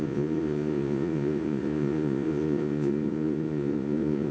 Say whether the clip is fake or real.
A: fake